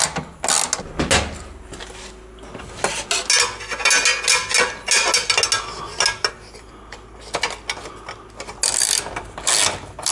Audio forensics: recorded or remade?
recorded